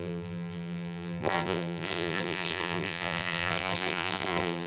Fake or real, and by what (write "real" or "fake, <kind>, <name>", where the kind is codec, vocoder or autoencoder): fake, vocoder, BigVGAN v2